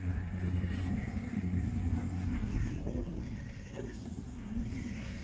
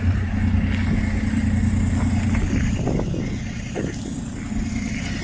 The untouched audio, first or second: second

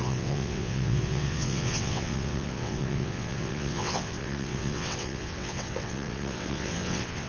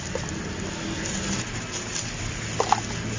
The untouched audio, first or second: second